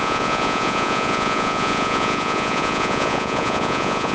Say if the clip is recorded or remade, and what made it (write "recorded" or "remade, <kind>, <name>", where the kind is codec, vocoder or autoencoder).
remade, vocoder, Vocos